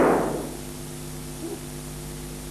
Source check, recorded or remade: recorded